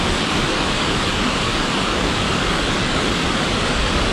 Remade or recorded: remade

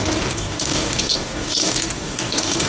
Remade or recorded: remade